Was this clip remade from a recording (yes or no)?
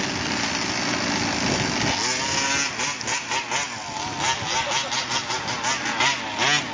no